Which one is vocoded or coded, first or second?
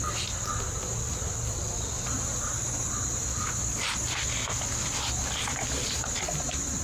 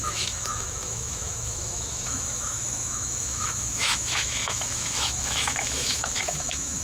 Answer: second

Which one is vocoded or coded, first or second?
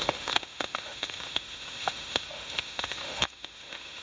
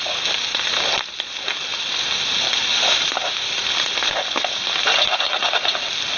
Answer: first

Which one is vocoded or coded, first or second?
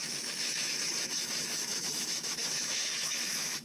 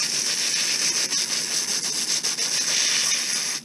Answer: first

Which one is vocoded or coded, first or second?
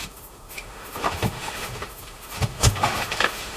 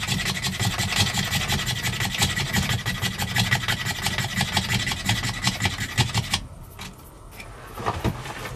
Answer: first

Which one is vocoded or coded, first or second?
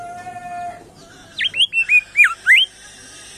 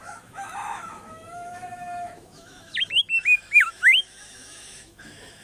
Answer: second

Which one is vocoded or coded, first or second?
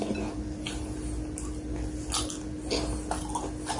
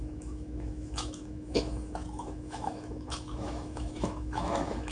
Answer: second